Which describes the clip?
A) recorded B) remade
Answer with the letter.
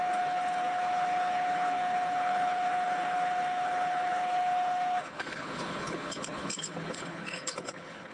B